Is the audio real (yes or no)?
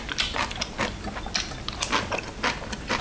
yes